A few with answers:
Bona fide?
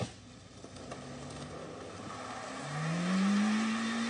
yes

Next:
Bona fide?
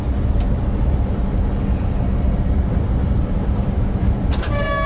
yes